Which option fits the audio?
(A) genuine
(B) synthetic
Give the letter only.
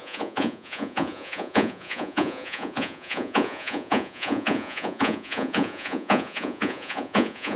B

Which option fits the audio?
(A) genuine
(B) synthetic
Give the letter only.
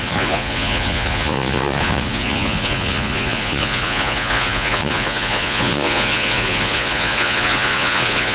B